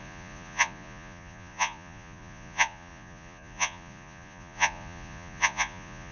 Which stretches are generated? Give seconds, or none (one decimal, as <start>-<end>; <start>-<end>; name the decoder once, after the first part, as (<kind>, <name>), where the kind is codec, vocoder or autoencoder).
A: 0.0-6.1 (vocoder, Vocos)